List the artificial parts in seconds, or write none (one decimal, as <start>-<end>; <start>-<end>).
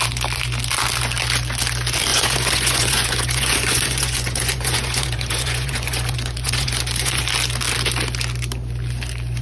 2.1-7.2